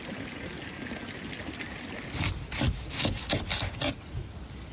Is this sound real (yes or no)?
yes